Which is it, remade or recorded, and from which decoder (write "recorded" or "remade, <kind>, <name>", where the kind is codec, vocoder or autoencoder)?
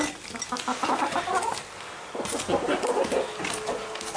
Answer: recorded